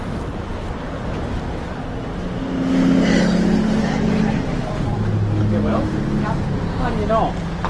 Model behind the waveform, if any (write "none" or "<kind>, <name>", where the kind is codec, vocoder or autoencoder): none